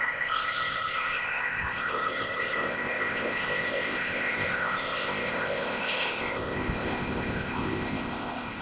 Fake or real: fake